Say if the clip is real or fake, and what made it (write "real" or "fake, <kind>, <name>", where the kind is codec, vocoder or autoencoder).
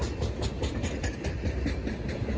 real